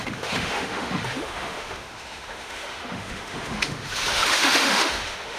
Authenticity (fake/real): fake